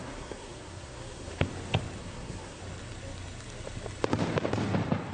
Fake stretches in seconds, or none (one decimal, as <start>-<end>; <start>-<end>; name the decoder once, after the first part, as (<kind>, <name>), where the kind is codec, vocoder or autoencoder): 0.0-1.5 (codec, SNAC); 2.0-2.6